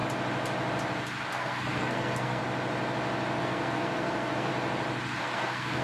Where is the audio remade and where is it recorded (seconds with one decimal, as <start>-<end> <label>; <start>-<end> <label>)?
0.0-1.3 recorded; 1.3-2.4 remade; 2.4-3.4 recorded; 3.4-4.5 remade; 4.5-5.2 recorded; 5.2-5.8 remade